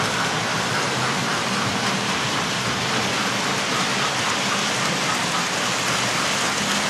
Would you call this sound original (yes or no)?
no